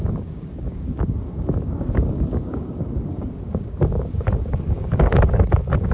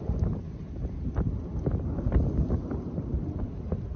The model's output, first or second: first